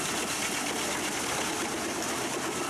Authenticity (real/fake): real